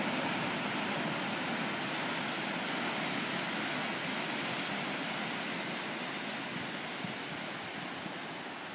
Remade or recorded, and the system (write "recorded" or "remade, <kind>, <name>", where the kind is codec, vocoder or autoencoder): recorded